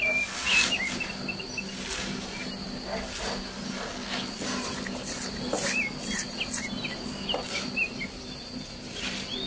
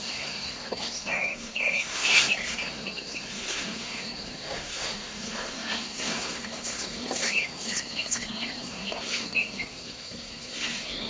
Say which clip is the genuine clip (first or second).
first